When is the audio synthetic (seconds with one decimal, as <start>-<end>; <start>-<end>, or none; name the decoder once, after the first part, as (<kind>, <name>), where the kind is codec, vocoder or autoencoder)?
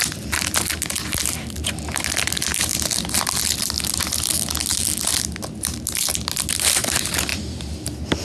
none